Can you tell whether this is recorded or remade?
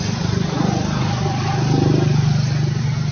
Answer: recorded